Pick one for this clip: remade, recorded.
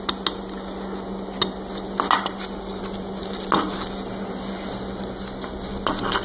recorded